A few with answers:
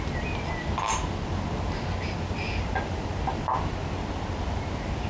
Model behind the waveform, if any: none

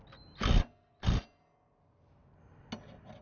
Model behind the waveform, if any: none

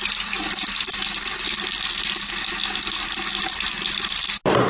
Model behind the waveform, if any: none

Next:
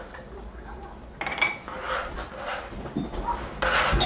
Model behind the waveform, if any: none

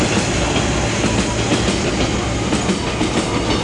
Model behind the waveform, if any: none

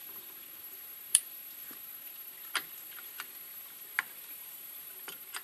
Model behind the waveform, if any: vocoder, BigVGAN v2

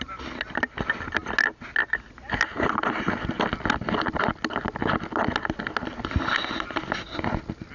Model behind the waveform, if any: none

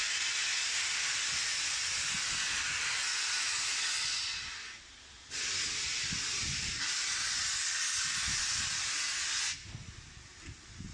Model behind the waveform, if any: none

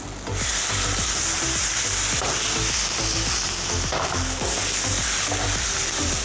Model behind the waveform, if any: none